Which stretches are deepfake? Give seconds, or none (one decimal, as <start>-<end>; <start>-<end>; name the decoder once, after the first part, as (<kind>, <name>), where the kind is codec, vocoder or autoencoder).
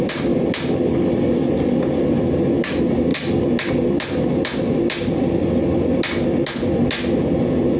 none